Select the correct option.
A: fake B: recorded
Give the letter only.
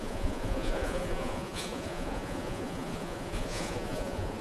A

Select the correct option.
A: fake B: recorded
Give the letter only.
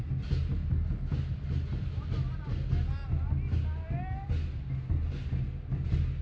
B